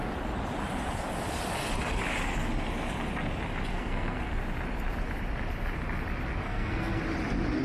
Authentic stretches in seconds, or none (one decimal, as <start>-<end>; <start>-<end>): 0.0-3.7; 4.3-6.4; 7.0-7.6

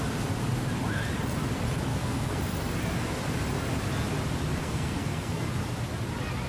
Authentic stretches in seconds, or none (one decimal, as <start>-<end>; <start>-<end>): 0.0-1.9; 2.4-4.6; 5.4-6.5

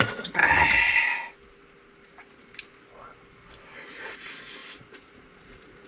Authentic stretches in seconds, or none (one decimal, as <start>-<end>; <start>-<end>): 0.4-3.9

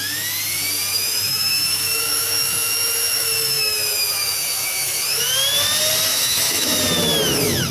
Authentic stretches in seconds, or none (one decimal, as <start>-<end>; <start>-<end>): 0.0-0.9; 5.2-6.1; 6.8-7.7

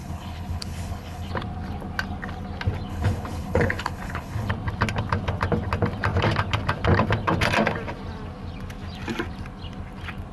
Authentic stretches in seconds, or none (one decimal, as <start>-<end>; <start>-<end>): 1.3-2.9; 4.5-10.3

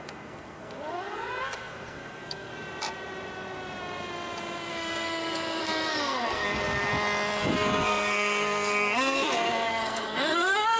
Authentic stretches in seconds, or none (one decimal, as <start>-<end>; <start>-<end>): 2.5-4.7; 6.9-7.4

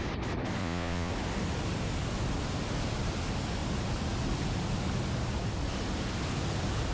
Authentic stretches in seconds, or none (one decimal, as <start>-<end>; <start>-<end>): 0.0-0.6; 1.1-6.9